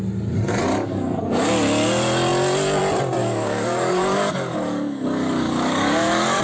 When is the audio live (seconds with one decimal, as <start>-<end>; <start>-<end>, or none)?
0.0-0.7; 1.5-3.2